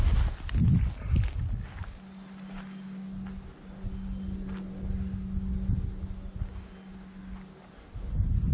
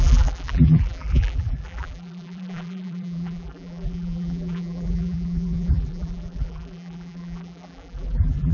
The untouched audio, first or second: first